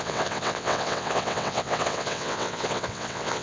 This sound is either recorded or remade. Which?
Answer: remade